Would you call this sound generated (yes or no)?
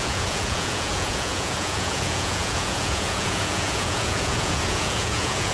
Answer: yes